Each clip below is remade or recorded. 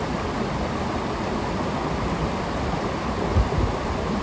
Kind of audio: recorded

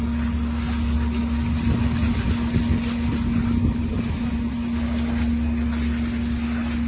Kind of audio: recorded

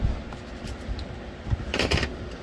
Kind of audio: recorded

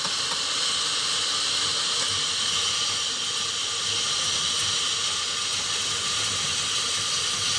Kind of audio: recorded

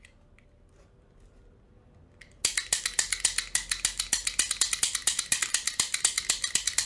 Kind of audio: recorded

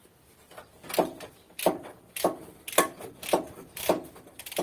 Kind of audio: recorded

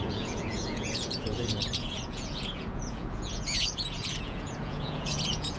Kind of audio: remade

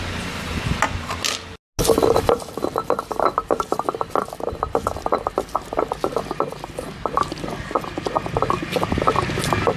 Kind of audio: recorded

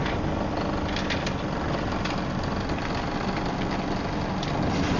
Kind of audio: recorded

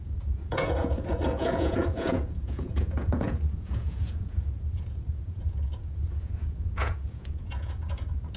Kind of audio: remade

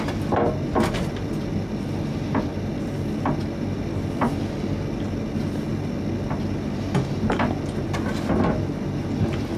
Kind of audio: recorded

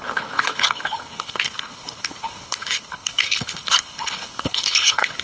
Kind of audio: remade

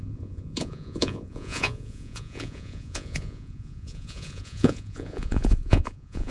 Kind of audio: remade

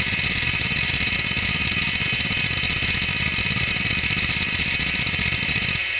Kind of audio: remade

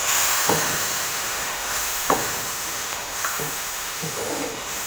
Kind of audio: remade